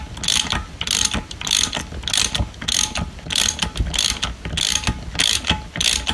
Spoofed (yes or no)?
no